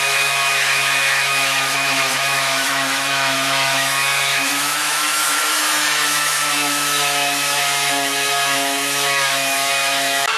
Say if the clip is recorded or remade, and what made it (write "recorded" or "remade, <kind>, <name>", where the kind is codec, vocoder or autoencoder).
remade, autoencoder, DAC-VAE